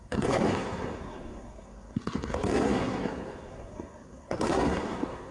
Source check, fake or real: fake